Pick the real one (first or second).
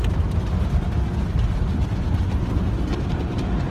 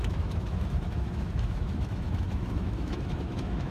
first